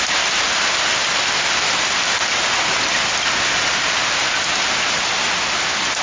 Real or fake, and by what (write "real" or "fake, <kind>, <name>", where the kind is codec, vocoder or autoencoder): real